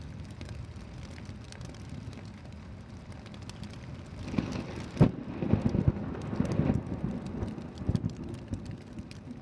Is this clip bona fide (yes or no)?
yes